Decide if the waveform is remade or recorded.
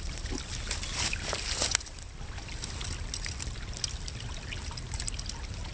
recorded